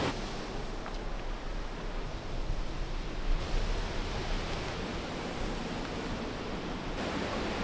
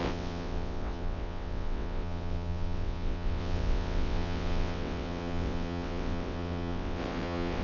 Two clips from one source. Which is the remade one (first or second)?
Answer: second